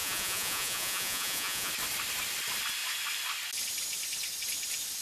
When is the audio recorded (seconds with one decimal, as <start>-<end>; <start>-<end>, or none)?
1.7-5.0